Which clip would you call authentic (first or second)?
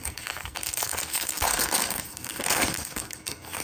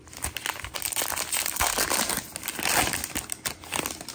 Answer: second